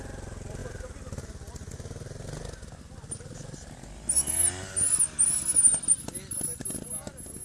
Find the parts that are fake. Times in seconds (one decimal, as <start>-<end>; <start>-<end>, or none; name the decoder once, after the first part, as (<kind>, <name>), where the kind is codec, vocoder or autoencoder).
none